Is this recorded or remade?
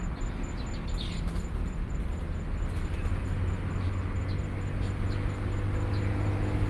recorded